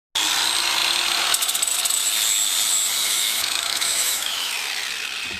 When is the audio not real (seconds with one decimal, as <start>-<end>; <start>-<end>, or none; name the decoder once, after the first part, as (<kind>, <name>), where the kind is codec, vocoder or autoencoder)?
3.0-4.5 (autoencoder, DAC-VAE)